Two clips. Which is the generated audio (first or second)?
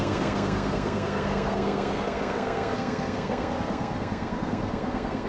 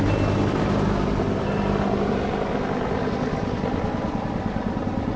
first